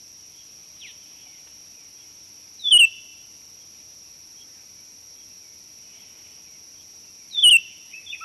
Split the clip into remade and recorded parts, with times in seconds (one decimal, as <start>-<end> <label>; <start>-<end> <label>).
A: 0.0-8.2 recorded